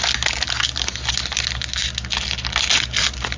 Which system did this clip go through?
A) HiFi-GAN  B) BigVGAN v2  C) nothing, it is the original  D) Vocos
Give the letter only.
C